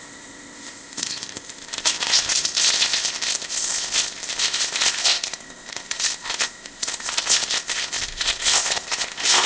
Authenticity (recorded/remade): remade